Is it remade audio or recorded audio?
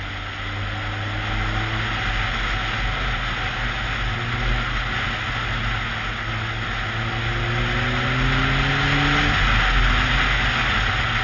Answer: recorded